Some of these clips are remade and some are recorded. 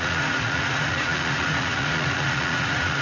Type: remade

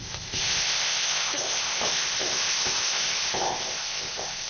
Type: remade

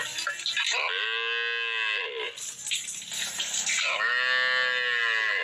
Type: recorded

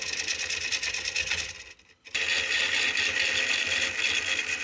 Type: recorded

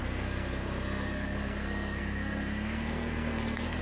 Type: remade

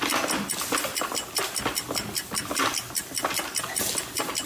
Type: recorded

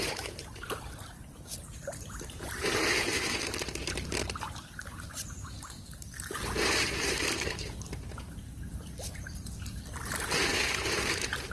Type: remade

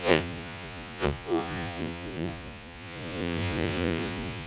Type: remade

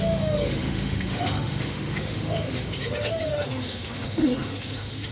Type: remade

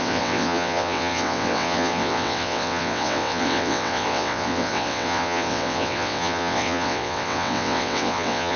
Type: remade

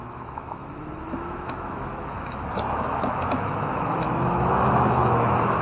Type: remade